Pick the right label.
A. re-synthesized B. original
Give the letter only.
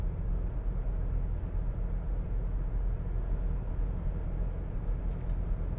B